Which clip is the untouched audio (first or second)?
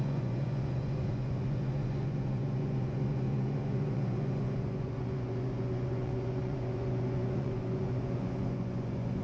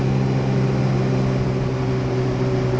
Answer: second